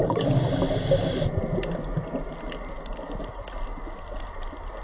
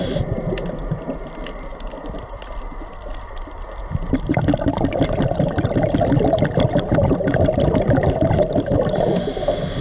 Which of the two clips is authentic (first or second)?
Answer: first